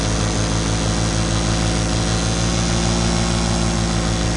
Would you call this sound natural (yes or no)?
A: yes